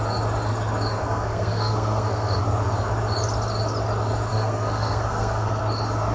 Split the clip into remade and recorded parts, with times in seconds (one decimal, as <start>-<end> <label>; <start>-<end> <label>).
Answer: 0.0-1.0 recorded; 1.0-2.4 remade; 2.4-4.3 recorded; 4.3-5.6 remade; 5.6-6.1 recorded